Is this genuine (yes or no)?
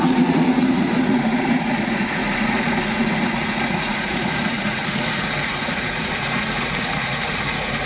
no